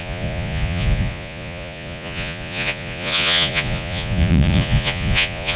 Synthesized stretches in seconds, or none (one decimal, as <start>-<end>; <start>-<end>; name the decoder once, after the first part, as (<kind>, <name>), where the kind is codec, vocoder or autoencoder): 0.0-5.6 (vocoder, Vocos)